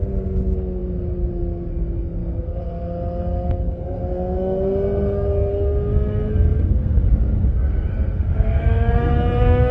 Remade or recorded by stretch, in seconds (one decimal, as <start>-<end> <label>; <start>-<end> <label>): 0.0-9.7 remade